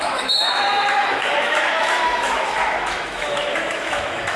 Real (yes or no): no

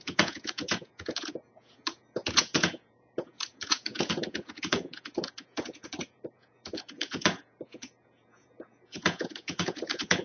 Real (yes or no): no